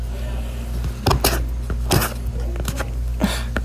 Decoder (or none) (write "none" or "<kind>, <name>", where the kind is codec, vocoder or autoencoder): none